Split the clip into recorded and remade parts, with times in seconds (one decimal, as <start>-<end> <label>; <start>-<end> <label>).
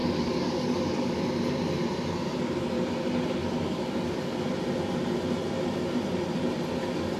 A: 0.0-1.2 remade; 1.2-3.4 recorded; 3.4-4.5 remade; 4.5-7.2 recorded